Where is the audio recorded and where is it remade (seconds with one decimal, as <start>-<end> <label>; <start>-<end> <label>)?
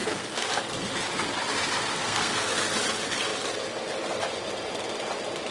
0.0-0.5 remade; 0.5-2.0 recorded; 2.0-2.7 remade; 2.7-5.5 recorded